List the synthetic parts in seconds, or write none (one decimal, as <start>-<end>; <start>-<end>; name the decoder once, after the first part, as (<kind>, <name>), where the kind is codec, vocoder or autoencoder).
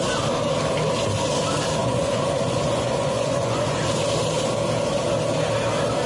1.8-3.8 (vocoder, Vocos)